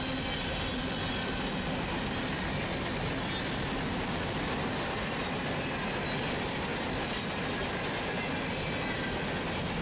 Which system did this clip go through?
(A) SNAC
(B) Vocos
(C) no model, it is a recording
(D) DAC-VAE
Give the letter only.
C